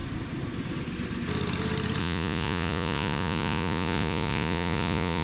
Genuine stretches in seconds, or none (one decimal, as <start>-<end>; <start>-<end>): 0.0-2.0